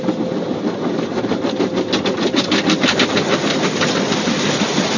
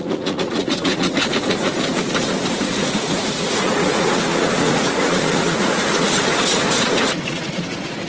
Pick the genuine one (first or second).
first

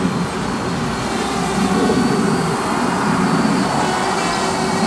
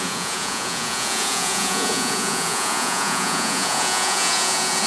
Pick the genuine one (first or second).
first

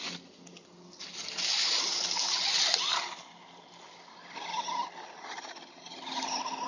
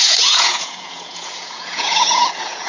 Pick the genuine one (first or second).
first